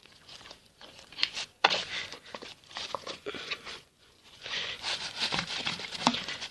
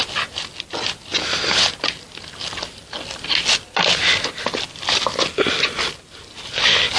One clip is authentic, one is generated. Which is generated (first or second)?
first